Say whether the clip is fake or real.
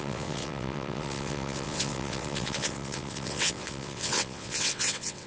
fake